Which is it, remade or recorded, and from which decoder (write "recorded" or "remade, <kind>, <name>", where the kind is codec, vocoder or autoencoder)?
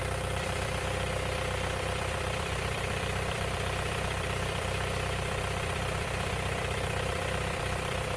remade, vocoder, BigVGAN v2